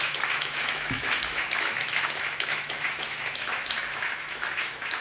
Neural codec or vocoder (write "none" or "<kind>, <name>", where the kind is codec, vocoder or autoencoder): autoencoder, DAC-VAE